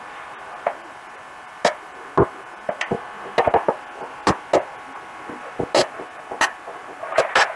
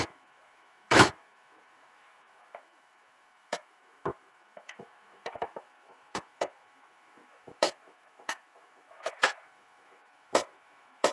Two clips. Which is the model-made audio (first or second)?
second